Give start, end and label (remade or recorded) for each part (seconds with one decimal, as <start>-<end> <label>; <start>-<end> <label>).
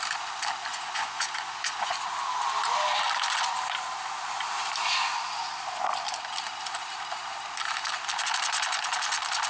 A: 0.0-0.7 recorded; 0.7-1.9 remade; 1.9-9.5 recorded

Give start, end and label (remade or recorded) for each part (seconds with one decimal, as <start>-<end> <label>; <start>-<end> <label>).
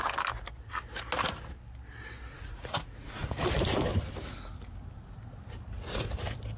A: 0.0-2.3 recorded; 2.3-3.5 remade; 3.5-6.6 recorded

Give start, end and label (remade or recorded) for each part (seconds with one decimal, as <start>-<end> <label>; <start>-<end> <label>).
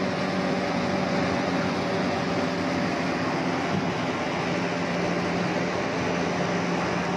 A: 0.0-2.3 remade; 2.3-7.2 recorded